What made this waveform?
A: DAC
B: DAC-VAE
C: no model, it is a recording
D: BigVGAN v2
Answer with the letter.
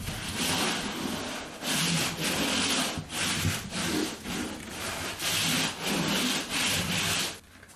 C